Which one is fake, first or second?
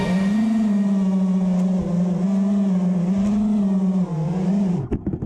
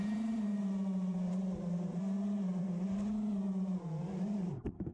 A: second